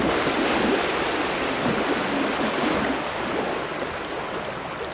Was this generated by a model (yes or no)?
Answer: no